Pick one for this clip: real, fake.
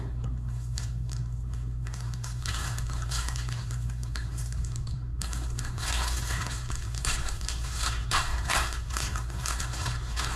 fake